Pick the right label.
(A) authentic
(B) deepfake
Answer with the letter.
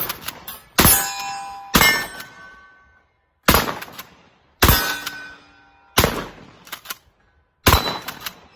A